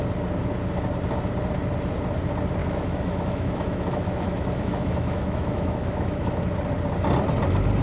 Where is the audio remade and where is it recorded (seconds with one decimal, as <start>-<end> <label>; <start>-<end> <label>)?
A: 0.0-2.6 recorded; 2.6-6.4 remade; 6.4-7.8 recorded